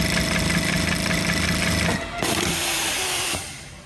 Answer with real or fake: real